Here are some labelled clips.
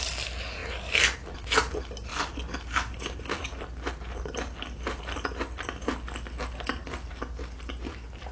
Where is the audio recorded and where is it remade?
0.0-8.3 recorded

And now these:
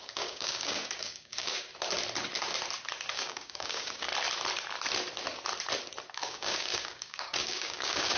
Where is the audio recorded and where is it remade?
0.0-1.7 remade; 1.7-3.1 recorded; 3.1-4.1 remade; 4.1-6.1 recorded; 6.1-8.2 remade

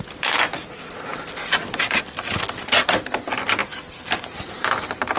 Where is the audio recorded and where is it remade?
0.0-5.2 recorded

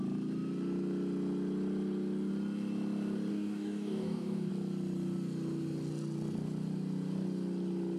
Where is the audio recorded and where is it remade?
0.0-3.3 recorded; 3.3-4.5 remade; 4.5-8.0 recorded

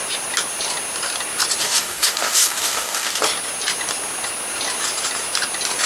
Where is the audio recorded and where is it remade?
0.0-1.6 recorded; 1.6-3.2 remade; 3.2-5.9 recorded